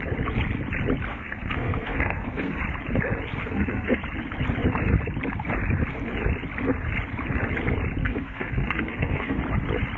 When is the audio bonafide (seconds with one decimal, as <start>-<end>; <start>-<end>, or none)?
0.0-1.1; 2.6-3.4; 4.0-8.0; 9.4-10.0